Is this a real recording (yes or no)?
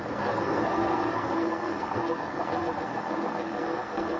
no